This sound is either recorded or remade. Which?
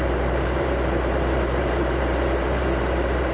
remade